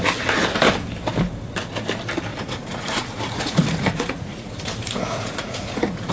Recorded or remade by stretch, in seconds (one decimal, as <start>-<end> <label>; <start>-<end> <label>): 0.0-2.3 recorded; 2.3-6.1 remade